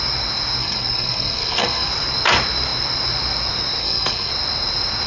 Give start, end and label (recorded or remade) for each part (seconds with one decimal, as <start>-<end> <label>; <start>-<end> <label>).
0.0-0.6 recorded; 0.6-1.9 remade; 1.9-3.8 recorded; 3.8-4.3 remade; 4.3-5.1 recorded